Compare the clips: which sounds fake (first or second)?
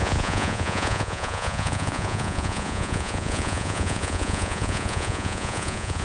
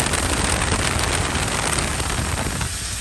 first